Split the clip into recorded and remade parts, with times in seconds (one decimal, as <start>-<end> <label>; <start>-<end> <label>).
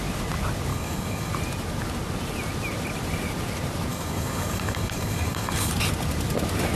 0.0-0.7 recorded; 0.7-1.3 remade; 1.3-3.9 recorded; 3.9-5.7 remade; 5.7-6.8 recorded